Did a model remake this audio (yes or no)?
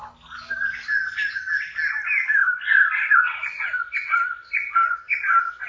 no